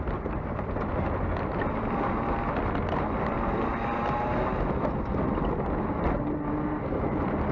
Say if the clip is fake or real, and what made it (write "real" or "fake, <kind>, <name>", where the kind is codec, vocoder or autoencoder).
real